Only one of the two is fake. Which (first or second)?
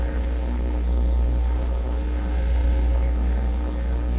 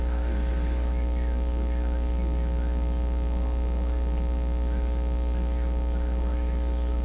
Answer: first